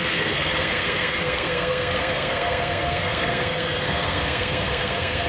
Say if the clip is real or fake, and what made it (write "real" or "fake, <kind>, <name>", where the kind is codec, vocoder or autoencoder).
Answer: fake, codec, SNAC